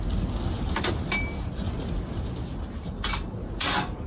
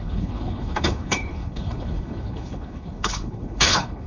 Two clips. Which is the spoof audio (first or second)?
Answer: second